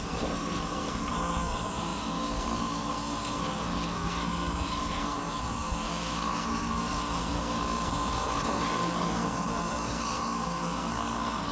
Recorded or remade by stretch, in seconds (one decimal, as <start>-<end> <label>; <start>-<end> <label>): 0.0-11.5 remade